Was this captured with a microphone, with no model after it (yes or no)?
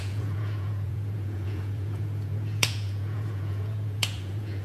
no